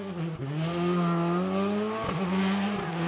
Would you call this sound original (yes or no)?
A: yes